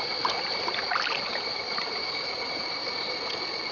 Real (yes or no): yes